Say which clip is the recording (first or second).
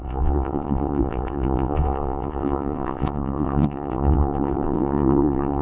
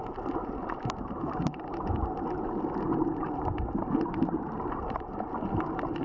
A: second